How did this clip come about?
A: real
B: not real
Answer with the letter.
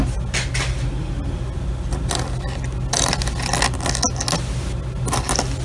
A